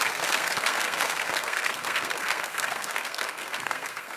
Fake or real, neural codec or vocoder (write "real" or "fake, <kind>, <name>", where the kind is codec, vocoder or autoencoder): fake, codec, SNAC